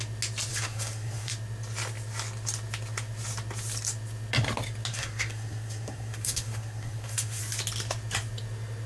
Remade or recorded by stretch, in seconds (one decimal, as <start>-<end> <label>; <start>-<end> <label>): 0.0-0.5 recorded; 0.5-1.3 remade; 1.3-4.9 recorded; 4.9-7.4 remade; 7.4-8.9 recorded